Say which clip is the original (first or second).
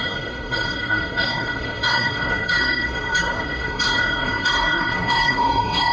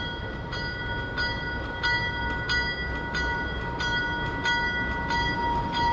second